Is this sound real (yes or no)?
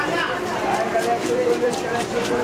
no